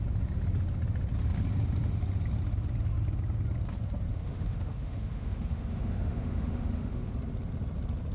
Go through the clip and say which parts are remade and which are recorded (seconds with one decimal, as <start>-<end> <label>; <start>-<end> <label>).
0.0-4.1 recorded; 4.1-7.1 remade; 7.1-8.1 recorded